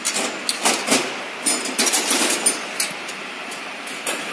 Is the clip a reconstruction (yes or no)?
no